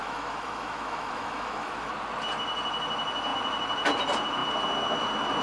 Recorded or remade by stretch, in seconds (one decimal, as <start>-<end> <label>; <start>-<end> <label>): 0.0-1.9 remade; 1.9-5.4 recorded